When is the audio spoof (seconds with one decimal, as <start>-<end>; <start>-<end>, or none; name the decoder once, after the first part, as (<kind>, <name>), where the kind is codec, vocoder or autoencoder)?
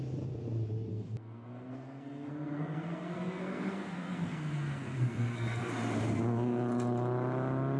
0.9-5.6 (codec, SNAC)